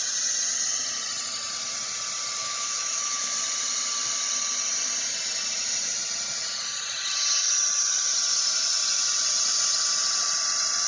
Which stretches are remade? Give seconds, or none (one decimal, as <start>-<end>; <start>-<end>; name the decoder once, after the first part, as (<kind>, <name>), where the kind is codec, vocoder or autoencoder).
2.4-3.3 (autoencoder, DAC-VAE)